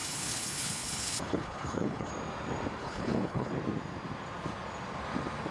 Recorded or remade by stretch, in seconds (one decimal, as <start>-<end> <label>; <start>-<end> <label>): 0.0-2.1 remade; 2.1-2.8 recorded; 2.8-3.5 remade; 3.5-5.5 recorded